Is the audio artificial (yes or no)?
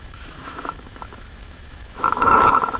yes